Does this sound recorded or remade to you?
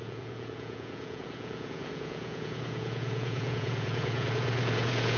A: remade